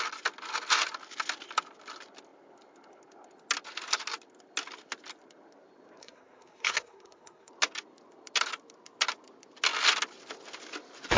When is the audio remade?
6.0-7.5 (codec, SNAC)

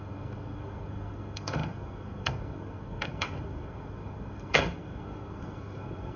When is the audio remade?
0.0-6.2 (codec, SNAC)

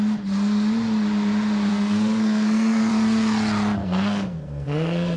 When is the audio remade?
1.7-2.9 (codec, SNAC); 3.8-5.2

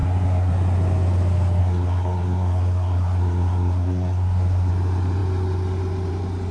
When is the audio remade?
0.0-0.5 (codec, SNAC); 1.6-4.7

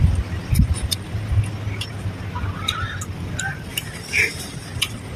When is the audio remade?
none

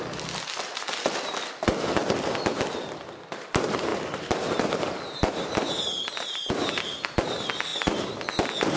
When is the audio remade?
none